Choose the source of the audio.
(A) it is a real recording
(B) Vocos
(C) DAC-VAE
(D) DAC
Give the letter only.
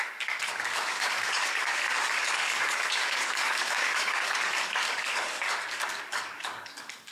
D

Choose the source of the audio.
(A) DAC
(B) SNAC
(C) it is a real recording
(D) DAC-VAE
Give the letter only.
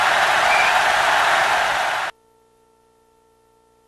C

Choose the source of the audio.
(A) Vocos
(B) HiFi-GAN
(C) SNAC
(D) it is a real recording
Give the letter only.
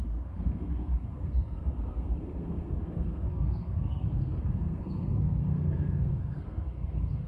C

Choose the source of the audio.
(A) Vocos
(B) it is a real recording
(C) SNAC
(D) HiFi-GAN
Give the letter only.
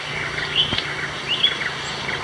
B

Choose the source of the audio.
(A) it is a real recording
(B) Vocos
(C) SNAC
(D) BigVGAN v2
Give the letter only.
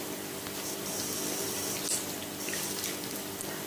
A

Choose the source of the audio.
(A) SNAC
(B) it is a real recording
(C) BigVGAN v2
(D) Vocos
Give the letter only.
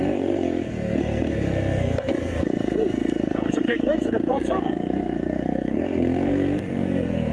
A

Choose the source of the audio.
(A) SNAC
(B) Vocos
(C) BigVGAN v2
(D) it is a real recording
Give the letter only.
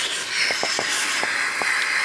D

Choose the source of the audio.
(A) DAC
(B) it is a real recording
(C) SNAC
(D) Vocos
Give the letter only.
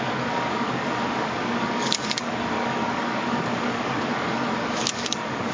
A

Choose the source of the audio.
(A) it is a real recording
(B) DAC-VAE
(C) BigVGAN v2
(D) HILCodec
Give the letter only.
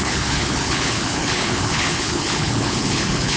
D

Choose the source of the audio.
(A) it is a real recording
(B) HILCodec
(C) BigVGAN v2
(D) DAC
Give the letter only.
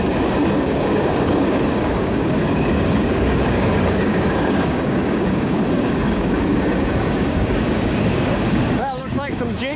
D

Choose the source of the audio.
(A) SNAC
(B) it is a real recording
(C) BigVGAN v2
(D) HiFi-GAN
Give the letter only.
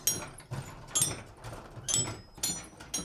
B